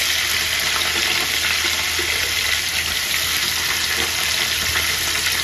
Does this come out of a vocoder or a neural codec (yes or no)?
no